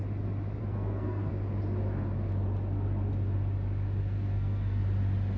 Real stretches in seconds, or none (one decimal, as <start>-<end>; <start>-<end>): 0.0-0.6; 1.3-4.0; 4.8-5.4